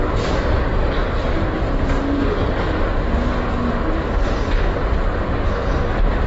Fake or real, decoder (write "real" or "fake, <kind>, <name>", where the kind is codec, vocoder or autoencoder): real